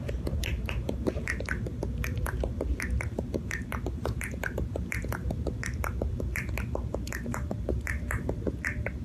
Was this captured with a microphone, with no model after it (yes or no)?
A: no